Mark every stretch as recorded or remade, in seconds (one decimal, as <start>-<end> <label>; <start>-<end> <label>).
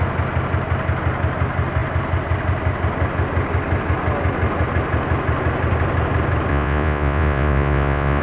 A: 0.0-6.5 recorded; 6.5-8.2 remade